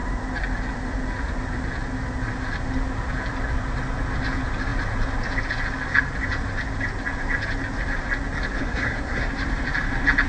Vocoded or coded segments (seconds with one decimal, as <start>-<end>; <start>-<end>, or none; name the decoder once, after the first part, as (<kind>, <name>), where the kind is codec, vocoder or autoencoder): 8.6-9.3 (codec, SNAC)